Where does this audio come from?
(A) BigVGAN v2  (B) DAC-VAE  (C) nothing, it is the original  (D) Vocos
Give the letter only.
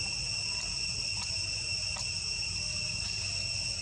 C